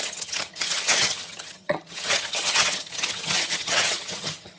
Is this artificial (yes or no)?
yes